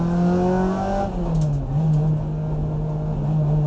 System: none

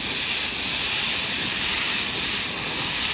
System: none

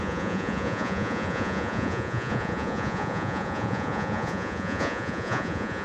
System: vocoder, Vocos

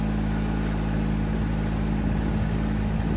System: none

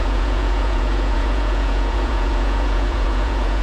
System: vocoder, Vocos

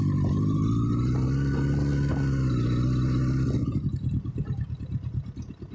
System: none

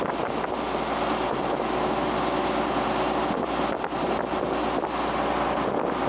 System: none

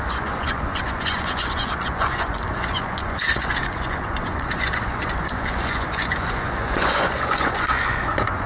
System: vocoder, Vocos